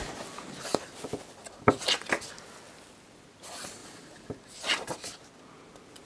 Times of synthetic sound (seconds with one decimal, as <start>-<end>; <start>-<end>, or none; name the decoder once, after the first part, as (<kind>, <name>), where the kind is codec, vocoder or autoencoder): none